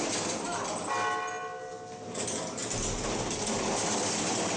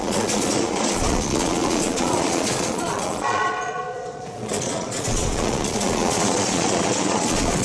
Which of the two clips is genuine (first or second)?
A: first